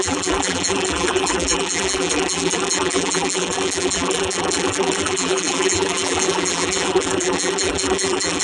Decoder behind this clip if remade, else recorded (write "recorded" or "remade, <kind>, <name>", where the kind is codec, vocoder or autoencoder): remade, vocoder, BigVGAN v2